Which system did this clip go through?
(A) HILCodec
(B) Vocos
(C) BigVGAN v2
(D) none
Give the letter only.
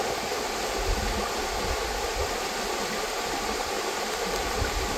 D